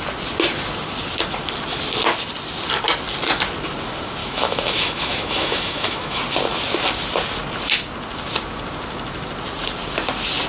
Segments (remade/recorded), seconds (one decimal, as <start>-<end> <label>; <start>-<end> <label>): 0.0-4.2 recorded; 4.2-6.2 remade; 6.2-10.5 recorded